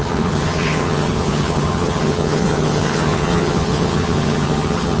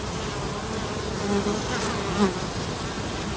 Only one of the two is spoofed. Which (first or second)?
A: first